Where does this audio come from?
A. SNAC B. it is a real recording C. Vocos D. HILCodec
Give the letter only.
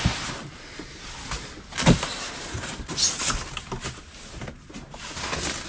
B